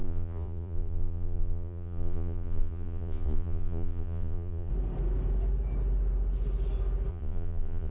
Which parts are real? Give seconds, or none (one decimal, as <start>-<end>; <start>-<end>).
4.7-7.1